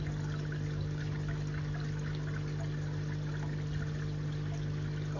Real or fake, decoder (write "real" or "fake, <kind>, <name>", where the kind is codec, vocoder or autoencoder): real